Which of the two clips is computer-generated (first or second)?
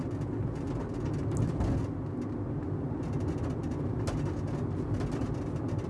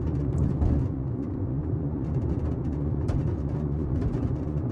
second